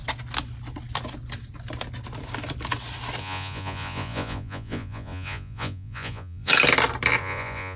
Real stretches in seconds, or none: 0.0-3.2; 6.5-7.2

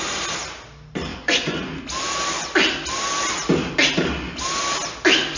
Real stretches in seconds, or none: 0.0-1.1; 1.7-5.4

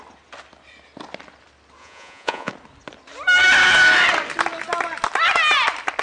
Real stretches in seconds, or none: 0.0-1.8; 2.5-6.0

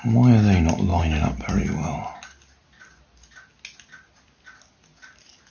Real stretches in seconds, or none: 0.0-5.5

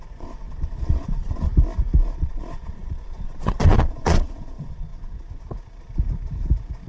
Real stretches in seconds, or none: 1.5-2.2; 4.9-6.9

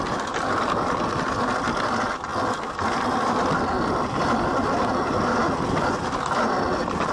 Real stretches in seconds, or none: 0.0-7.1